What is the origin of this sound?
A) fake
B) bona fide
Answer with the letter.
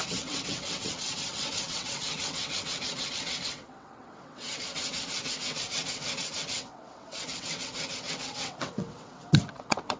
A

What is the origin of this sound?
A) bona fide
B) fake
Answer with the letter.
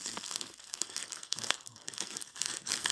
B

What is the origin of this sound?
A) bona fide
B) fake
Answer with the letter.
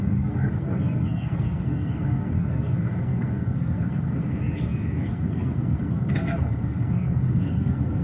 B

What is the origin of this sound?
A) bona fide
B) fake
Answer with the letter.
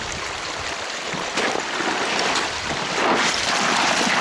A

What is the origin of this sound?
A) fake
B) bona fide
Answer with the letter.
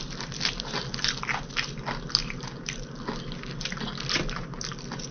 B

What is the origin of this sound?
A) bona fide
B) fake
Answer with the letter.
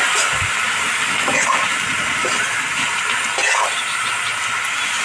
A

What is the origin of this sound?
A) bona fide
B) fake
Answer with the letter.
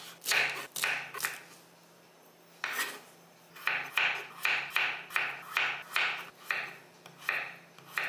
A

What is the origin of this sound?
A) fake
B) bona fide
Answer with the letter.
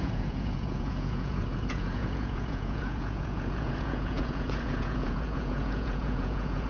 A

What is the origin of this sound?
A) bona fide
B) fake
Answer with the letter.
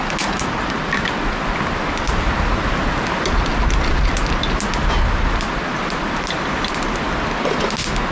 A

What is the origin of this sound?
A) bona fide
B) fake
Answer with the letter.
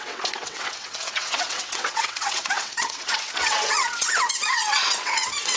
B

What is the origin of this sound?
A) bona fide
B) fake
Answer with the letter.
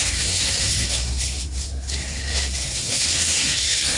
B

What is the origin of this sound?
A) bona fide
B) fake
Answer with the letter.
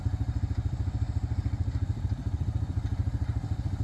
B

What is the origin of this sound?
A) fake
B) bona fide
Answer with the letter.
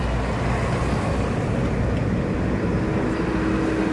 B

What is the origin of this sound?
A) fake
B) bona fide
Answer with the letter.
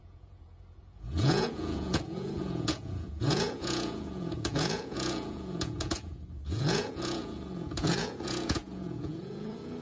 A